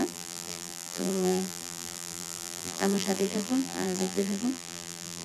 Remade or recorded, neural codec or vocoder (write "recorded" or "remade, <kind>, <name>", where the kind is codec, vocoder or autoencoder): remade, vocoder, BigVGAN v2